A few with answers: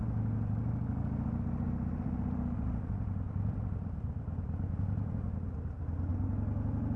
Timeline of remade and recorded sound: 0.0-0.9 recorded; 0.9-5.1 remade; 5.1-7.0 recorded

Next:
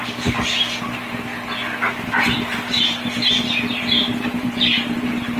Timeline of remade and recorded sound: 0.0-1.3 remade; 1.3-1.9 recorded; 1.9-5.4 remade

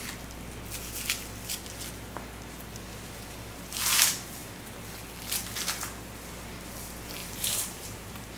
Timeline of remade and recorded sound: 0.0-7.2 recorded; 7.2-8.4 remade

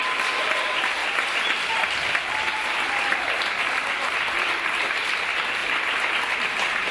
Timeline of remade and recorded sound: 0.0-6.9 recorded